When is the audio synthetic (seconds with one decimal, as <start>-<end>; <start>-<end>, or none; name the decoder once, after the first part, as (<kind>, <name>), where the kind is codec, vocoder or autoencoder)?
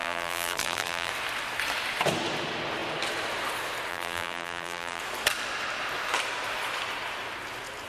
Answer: 0.0-1.1 (vocoder, BigVGAN v2); 3.9-5.0